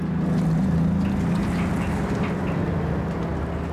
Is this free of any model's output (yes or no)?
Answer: yes